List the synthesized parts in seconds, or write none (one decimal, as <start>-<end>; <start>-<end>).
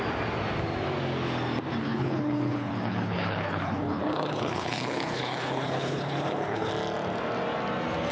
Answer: 1.8-6.7